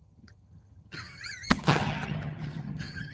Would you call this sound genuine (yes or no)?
no